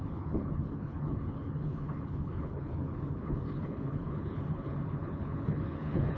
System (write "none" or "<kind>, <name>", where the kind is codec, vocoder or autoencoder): codec, HILCodec